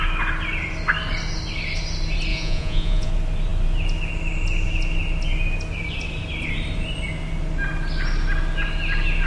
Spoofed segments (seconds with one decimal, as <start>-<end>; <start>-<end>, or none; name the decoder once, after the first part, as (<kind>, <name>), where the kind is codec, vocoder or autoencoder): 2.3-3.1 (vocoder, Vocos)